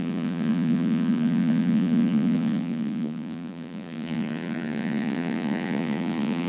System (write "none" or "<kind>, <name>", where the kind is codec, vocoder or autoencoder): vocoder, Vocos